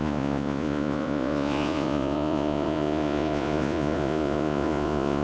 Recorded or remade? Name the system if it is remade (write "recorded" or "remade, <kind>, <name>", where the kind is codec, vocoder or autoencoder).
remade, vocoder, Vocos